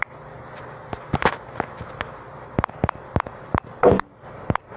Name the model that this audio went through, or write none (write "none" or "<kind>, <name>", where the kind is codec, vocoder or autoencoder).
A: vocoder, BigVGAN v2